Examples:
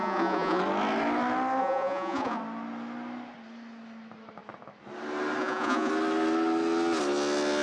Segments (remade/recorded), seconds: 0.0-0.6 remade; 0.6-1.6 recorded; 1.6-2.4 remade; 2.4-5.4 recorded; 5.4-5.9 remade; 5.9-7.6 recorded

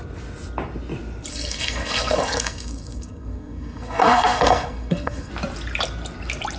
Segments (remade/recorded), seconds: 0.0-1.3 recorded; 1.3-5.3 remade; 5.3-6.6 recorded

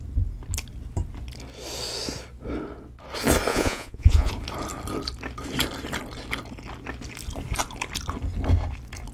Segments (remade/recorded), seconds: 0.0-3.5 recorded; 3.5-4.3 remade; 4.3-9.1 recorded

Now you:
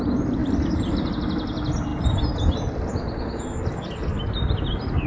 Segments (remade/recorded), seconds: 0.0-0.4 recorded; 0.4-1.1 remade; 1.1-5.1 recorded